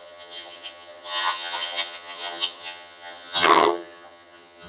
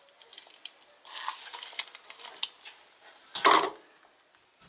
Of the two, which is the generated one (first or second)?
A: first